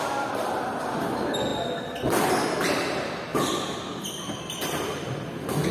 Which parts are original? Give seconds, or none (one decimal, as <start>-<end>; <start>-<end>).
1.5-2.3; 3.3-4.0